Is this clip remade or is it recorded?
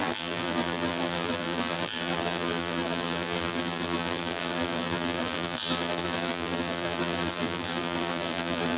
remade